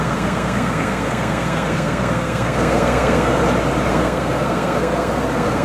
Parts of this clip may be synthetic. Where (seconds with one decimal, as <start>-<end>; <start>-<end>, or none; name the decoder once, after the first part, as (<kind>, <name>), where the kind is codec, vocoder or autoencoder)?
0.0-3.4 (codec, SNAC); 3.9-5.6